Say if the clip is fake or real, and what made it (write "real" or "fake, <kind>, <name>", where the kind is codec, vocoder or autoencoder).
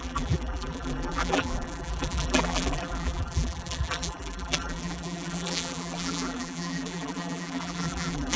fake, vocoder, BigVGAN v2